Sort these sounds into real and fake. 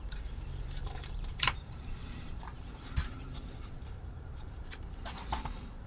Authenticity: fake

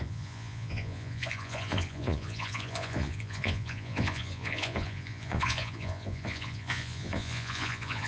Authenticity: fake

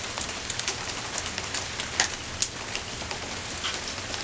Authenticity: real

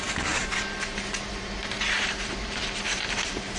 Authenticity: fake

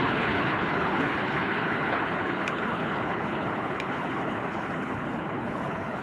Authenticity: fake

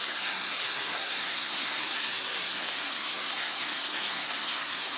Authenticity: fake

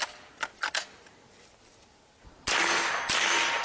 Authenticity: real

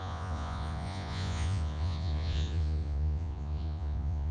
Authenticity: fake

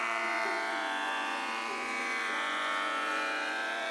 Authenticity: fake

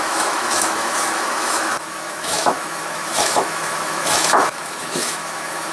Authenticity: fake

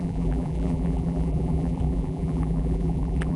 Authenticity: fake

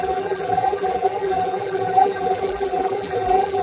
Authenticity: fake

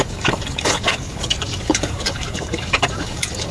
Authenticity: fake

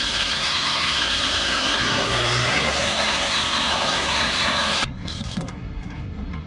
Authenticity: fake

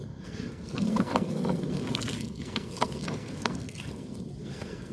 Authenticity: fake